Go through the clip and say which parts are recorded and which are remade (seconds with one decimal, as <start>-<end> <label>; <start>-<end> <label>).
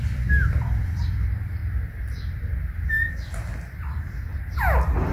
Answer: 0.0-1.6 remade; 1.6-3.7 recorded; 3.7-5.1 remade